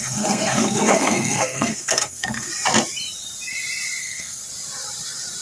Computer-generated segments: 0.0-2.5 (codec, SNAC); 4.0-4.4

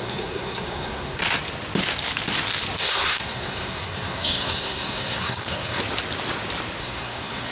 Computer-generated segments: 0.0-1.2 (codec, SNAC); 2.8-5.8; 6.8-7.5

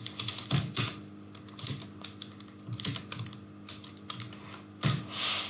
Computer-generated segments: none